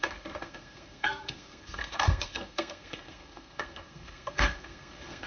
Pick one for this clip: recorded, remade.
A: remade